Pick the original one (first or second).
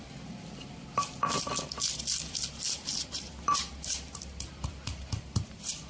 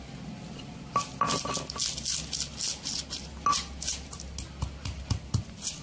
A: second